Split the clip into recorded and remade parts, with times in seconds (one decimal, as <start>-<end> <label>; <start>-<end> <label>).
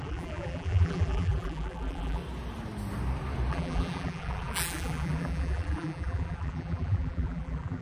0.0-2.2 remade; 2.2-3.5 recorded; 3.5-7.8 remade